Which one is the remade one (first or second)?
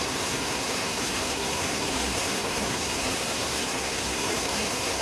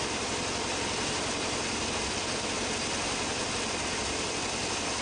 first